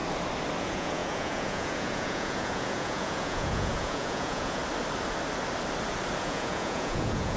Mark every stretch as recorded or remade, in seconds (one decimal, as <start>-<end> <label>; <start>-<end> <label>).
0.0-0.6 recorded; 0.6-4.6 remade; 4.6-6.2 recorded; 6.2-7.4 remade